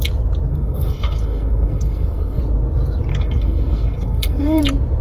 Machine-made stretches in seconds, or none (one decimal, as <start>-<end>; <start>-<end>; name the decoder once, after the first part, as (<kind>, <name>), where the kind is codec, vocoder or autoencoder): 0.5-2.4 (codec, SNAC); 3.1-4.6